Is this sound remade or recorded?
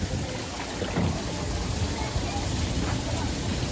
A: recorded